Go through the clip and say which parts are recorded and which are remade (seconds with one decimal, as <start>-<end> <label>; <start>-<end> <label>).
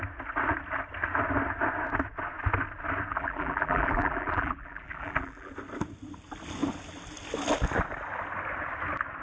0.0-3.1 recorded; 3.1-5.5 remade; 5.5-9.2 recorded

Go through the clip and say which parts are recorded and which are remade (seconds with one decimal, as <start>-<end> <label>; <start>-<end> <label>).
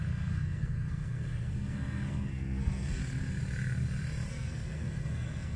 0.0-3.0 remade; 3.0-4.3 recorded; 4.3-5.6 remade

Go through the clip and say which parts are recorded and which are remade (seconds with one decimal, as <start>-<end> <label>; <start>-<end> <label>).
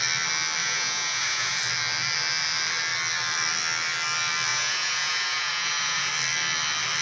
0.0-0.6 recorded; 0.6-1.6 remade; 1.6-4.5 recorded; 4.5-6.1 remade; 6.1-7.0 recorded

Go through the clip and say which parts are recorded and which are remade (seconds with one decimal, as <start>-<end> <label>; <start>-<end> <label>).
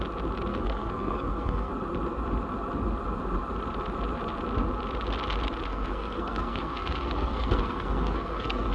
0.0-0.5 recorded; 0.5-1.7 remade; 1.7-5.7 recorded; 5.7-8.7 remade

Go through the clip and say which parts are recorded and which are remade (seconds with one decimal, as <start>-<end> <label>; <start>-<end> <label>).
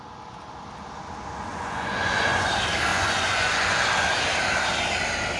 0.0-1.5 recorded; 1.5-2.5 remade; 2.5-2.9 recorded; 2.9-3.8 remade; 3.8-5.4 recorded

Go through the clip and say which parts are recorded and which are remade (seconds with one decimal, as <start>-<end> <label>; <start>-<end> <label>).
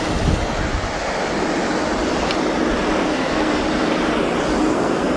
0.0-3.0 recorded; 3.0-3.5 remade; 3.5-4.6 recorded; 4.6-5.2 remade